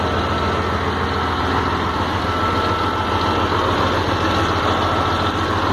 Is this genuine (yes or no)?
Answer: yes